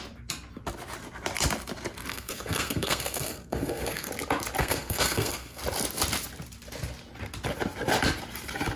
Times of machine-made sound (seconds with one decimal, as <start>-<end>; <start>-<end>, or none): 2.1-4.1; 4.6-5.6